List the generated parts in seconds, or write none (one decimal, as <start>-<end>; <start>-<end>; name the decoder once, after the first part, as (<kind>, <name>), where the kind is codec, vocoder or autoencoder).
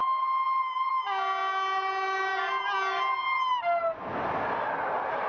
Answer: none